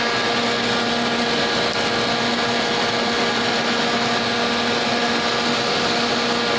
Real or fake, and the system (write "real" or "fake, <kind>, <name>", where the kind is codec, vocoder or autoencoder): real